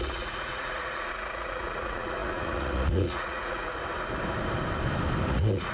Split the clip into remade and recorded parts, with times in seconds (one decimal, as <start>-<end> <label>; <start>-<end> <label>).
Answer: 0.0-3.8 remade; 3.8-5.3 recorded; 5.3-5.7 remade